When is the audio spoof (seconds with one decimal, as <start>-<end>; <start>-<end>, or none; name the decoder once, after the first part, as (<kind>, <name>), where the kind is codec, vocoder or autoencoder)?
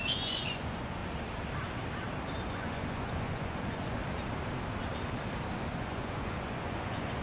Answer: 0.0-1.0 (vocoder, Vocos); 2.5-4.0; 5.7-7.2